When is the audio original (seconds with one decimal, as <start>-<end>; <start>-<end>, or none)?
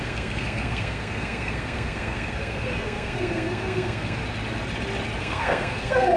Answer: 4.2-5.2